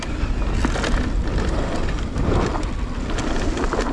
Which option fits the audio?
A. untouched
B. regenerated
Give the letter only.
A